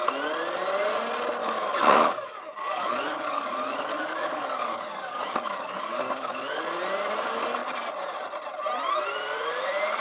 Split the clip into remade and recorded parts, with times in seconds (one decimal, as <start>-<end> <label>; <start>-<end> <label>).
0.0-1.4 recorded; 1.4-3.5 remade; 3.5-3.9 recorded; 3.9-6.6 remade; 6.6-10.0 recorded